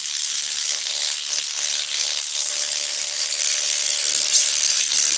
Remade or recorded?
remade